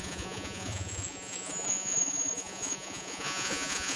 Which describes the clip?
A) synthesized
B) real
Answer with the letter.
A